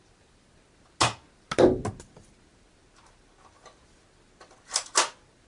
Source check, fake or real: real